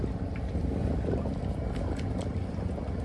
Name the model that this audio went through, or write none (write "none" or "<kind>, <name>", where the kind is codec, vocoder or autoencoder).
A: none